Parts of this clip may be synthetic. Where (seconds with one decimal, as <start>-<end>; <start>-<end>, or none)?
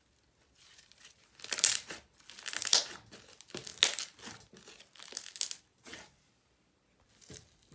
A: 5.7-6.4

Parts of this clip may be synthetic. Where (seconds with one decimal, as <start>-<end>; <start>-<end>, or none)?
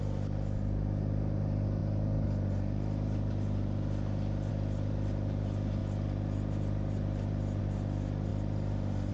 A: none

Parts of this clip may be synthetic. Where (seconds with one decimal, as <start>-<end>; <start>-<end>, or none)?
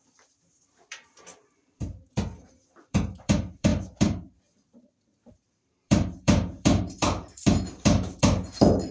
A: 0.0-1.3; 2.1-8.9